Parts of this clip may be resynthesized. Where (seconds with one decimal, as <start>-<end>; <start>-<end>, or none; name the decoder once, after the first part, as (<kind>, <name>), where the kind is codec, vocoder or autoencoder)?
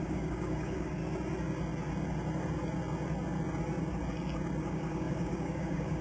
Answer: 0.0-1.0 (codec, DAC); 4.6-6.0